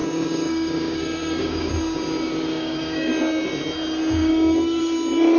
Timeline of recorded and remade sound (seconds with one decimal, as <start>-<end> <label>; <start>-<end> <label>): 0.0-1.7 remade; 1.7-2.5 recorded; 2.5-3.1 remade; 3.1-4.2 recorded; 4.2-4.8 remade; 4.8-5.4 recorded